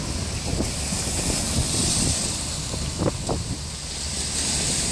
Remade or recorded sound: recorded